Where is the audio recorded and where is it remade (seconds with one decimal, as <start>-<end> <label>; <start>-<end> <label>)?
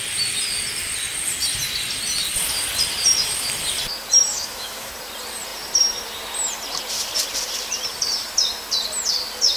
0.0-4.3 recorded; 4.3-4.9 remade; 4.9-9.6 recorded